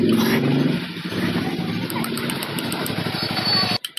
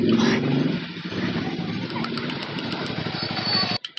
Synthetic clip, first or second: second